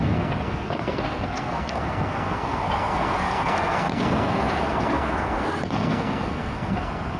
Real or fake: fake